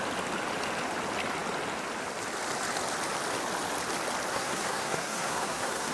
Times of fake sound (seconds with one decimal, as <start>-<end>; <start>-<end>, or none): 4.3-5.9

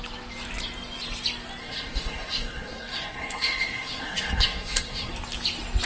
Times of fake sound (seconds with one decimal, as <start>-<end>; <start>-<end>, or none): 1.6-5.1

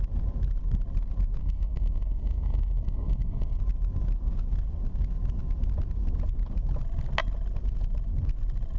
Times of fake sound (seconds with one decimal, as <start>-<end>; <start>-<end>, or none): 1.4-3.6

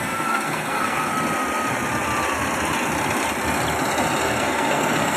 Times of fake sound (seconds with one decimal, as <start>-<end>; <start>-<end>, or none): 0.0-1.1; 4.2-5.2

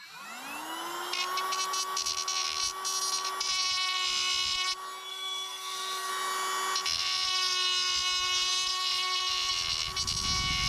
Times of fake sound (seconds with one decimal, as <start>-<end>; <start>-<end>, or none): 5.1-6.1

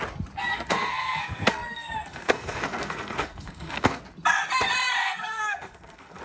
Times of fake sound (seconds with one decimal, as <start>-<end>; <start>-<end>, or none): 0.5-4.0; 5.0-6.2

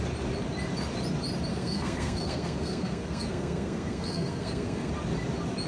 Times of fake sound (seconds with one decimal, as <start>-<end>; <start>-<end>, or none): 1.5-4.9